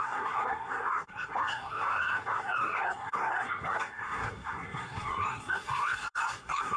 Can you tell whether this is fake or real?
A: fake